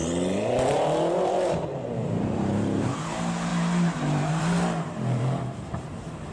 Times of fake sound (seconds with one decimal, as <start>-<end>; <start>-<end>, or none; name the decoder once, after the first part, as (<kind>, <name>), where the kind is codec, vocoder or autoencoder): 1.1-6.3 (vocoder, BigVGAN v2)